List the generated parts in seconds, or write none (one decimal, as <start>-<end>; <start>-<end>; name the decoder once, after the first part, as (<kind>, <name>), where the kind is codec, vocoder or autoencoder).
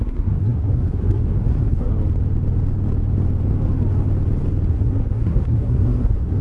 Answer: 0.0-1.9 (codec, SNAC); 4.7-6.4